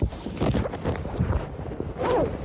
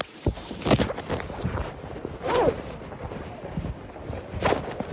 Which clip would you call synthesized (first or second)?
first